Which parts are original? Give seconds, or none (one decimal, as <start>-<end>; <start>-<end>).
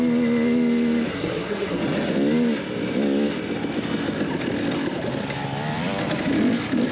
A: 0.0-1.1; 1.8-6.9